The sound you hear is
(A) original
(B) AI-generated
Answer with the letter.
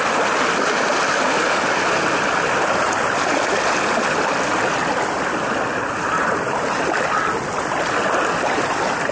A